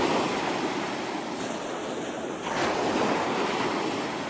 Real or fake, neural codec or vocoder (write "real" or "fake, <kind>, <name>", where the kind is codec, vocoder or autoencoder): real